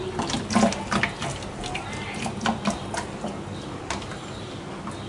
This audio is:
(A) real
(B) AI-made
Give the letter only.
A